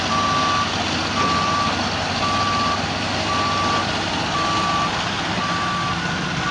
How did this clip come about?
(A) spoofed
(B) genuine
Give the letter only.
B